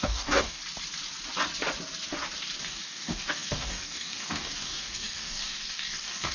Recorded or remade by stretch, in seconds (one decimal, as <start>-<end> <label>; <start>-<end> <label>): 0.0-0.6 remade; 0.6-2.6 recorded; 2.6-6.3 remade

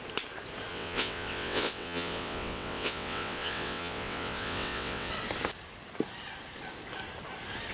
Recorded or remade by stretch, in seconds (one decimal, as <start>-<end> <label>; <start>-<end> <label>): 0.0-0.7 recorded; 0.7-5.1 remade; 5.1-7.7 recorded

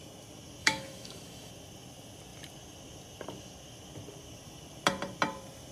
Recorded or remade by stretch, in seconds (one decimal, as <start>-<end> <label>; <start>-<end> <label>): 0.0-0.6 recorded; 0.6-1.5 remade; 1.5-5.7 recorded

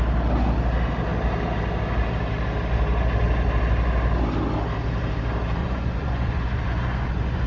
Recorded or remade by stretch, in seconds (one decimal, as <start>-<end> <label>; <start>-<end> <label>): 0.0-5.6 recorded; 5.6-7.5 remade

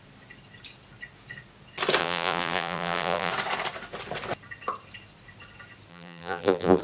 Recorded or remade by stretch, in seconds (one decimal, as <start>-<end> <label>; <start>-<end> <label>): 0.0-2.0 recorded; 2.0-3.3 remade; 3.3-5.9 recorded; 5.9-6.8 remade

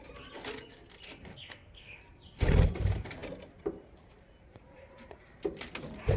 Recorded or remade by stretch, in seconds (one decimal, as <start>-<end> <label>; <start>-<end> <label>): 0.0-1.3 recorded; 1.3-2.0 remade; 2.0-6.2 recorded

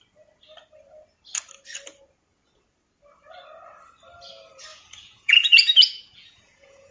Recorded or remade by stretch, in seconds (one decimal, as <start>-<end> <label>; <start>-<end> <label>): 0.0-4.7 recorded; 4.7-6.9 remade

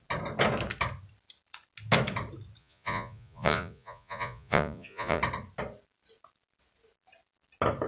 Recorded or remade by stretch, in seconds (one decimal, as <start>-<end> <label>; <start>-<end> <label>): 0.0-2.6 recorded; 2.6-5.2 remade; 5.2-7.9 recorded